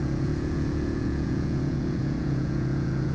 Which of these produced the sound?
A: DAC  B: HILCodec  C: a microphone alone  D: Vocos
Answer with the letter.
D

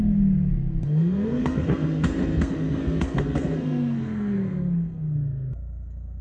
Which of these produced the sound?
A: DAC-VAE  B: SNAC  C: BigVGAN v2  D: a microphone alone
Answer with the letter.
B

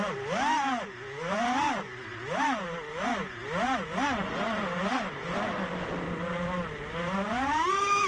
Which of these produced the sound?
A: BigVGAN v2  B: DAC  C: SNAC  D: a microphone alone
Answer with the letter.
D